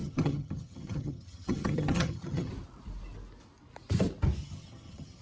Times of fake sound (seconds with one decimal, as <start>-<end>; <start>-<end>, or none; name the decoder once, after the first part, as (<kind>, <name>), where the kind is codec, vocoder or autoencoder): 0.0-2.5 (vocoder, HiFi-GAN); 4.4-5.2